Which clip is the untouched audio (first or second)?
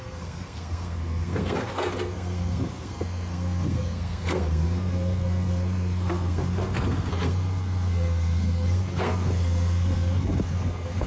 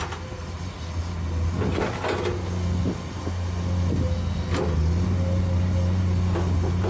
second